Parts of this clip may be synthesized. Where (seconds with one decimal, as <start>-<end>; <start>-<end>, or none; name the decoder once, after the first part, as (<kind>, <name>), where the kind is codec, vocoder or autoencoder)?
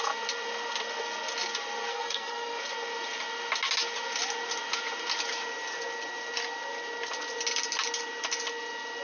1.9-2.6 (codec, SNAC)